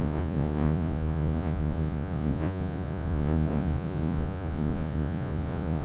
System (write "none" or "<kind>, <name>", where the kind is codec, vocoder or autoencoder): vocoder, Vocos